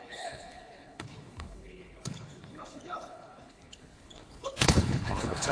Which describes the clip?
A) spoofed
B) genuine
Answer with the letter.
A